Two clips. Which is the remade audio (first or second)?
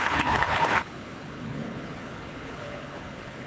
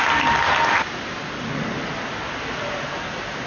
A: first